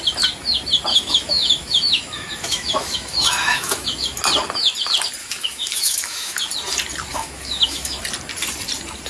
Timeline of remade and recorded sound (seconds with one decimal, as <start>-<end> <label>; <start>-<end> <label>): 0.0-0.9 recorded; 0.9-4.2 remade; 4.2-5.2 recorded; 5.2-6.4 remade; 6.4-7.1 recorded; 7.1-8.0 remade; 8.0-9.1 recorded